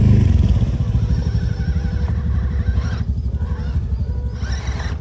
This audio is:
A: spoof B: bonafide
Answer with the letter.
B